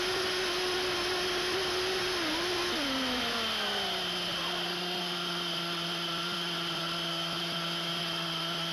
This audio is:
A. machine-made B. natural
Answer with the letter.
B